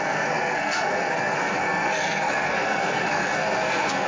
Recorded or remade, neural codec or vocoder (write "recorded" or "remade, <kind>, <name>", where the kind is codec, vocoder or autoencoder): remade, codec, SNAC